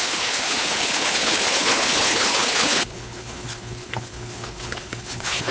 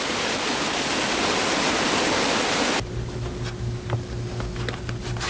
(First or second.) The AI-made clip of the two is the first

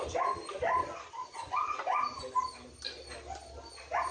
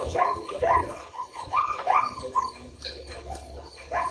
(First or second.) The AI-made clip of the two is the second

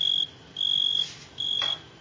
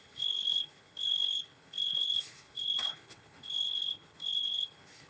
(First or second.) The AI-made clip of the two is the second